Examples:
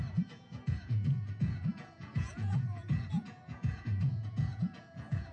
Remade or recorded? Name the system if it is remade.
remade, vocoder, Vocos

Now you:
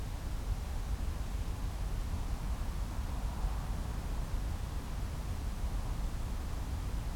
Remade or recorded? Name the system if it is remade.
recorded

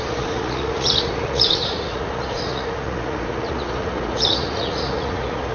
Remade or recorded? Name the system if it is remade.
remade, vocoder, Vocos